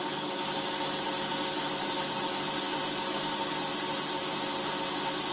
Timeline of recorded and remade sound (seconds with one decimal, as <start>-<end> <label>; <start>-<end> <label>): 0.0-5.3 recorded